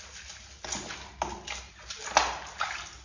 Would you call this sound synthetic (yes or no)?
no